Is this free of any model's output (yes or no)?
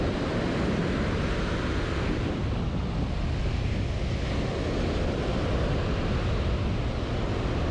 yes